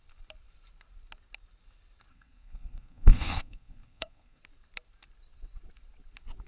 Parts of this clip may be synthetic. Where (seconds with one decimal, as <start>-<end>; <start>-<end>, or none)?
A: 2.1-4.4